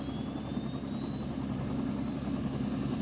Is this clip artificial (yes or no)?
no